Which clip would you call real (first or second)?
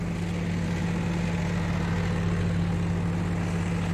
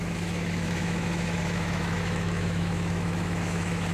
first